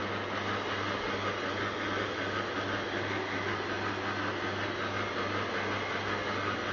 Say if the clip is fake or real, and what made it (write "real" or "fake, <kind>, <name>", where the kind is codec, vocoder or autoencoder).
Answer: real